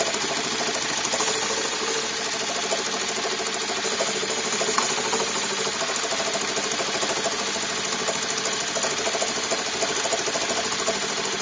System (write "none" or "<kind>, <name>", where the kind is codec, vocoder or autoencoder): none